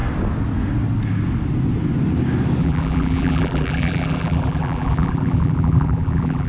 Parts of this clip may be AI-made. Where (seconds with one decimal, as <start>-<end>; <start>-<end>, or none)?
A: 2.6-6.5